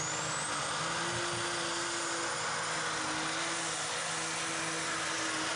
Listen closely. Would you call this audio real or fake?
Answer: real